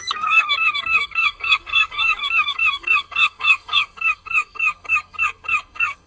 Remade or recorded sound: remade